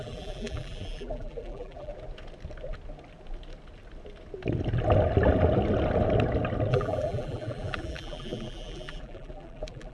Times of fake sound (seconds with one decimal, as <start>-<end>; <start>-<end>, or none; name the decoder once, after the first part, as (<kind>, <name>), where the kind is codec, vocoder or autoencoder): 0.0-1.9 (vocoder, BigVGAN v2); 6.7-9.9